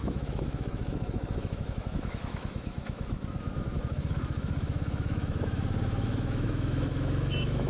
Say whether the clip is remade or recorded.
remade